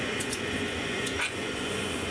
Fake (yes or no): yes